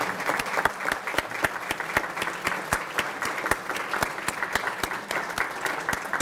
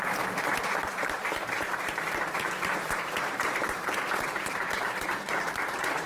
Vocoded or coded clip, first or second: second